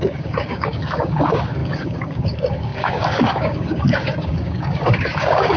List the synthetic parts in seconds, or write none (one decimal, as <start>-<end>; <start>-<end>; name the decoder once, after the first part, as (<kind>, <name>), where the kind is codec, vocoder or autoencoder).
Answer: 0.0-5.6 (codec, DAC)